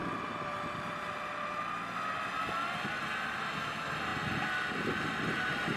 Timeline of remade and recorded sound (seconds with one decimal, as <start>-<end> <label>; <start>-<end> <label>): 0.0-5.8 recorded